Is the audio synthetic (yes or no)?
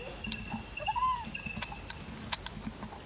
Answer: no